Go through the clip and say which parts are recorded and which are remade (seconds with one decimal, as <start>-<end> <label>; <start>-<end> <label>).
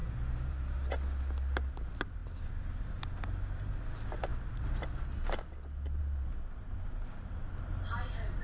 0.0-8.4 recorded